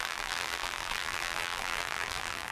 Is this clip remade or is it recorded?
remade